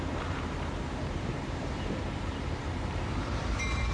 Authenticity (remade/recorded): remade